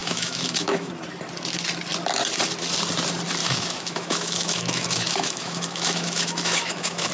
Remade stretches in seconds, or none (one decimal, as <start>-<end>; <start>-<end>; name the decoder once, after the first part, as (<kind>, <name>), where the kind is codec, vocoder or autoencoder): 0.0-0.9 (autoencoder, DAC-VAE); 3.4-7.1